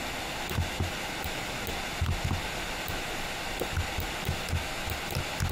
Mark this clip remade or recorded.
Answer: recorded